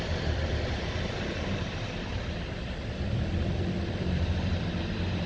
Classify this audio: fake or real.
fake